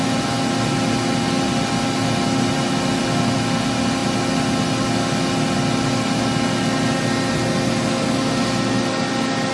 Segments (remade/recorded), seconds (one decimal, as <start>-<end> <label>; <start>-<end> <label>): 0.0-9.5 recorded